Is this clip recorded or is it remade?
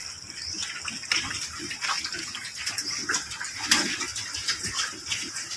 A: recorded